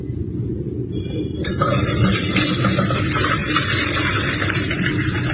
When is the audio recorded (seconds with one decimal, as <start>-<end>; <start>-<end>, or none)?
0.0-5.3